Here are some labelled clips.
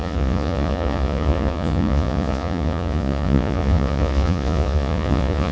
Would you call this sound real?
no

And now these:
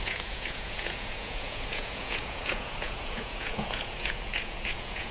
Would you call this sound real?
no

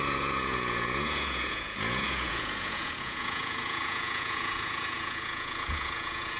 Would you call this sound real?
no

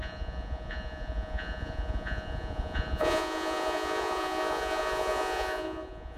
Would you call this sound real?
no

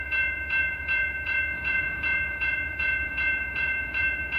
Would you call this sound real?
no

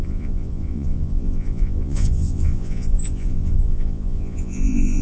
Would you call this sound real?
no